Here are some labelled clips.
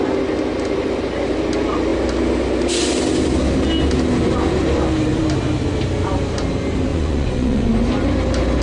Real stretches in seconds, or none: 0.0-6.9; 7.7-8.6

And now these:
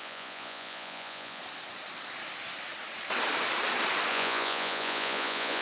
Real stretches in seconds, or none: 1.4-4.1

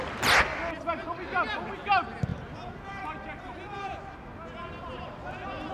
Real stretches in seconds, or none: 0.0-5.7

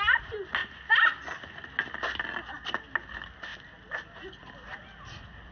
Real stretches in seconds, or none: 0.0-5.5

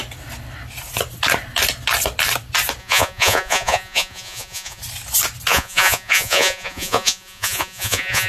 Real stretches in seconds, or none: 0.0-2.8; 4.8-5.5

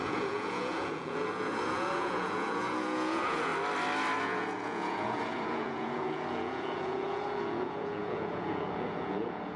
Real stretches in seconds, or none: 3.5-4.2

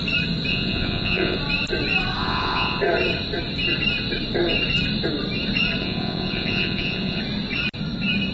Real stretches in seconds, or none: 0.0-0.5; 1.4-2.2; 2.8-5.8; 7.2-8.3